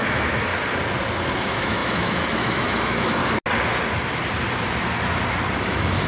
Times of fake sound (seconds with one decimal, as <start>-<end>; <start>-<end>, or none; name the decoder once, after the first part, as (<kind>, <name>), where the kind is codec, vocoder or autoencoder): 0.0-0.5 (autoencoder, DAC-VAE); 1.4-3.2; 5.6-6.1